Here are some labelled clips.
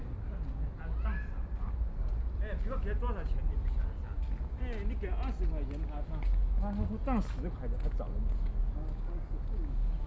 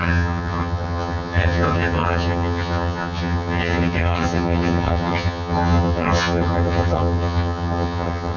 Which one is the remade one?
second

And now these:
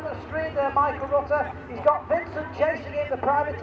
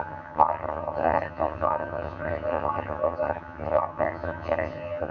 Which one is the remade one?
second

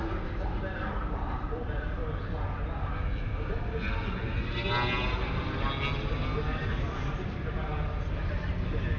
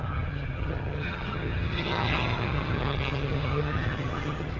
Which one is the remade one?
second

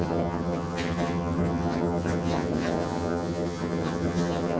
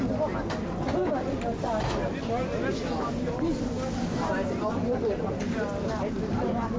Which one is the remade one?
first